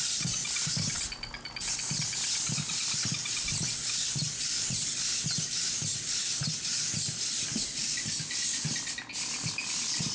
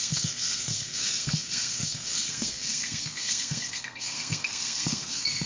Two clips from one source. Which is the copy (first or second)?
second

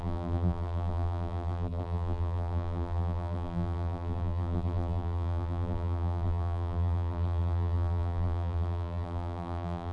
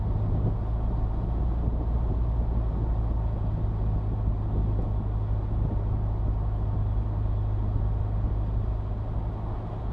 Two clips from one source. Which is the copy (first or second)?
first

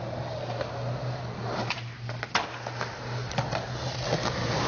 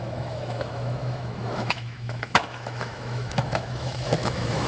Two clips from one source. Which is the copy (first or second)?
second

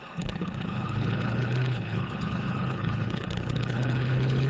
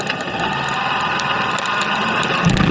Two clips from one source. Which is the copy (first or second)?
first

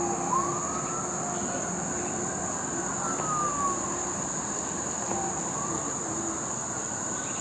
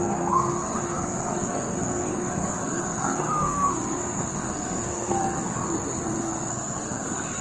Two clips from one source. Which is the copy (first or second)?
second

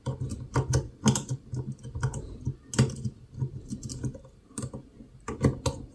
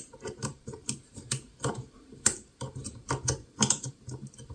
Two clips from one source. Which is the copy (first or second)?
second